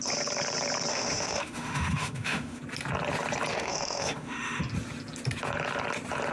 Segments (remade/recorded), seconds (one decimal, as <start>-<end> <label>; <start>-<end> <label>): 0.0-0.9 recorded; 0.9-2.6 remade; 2.6-3.5 recorded; 3.5-4.6 remade; 4.6-6.3 recorded